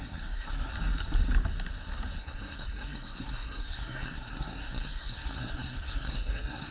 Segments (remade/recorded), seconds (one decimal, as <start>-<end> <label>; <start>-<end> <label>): 0.0-0.7 remade; 0.7-2.2 recorded; 2.2-6.7 remade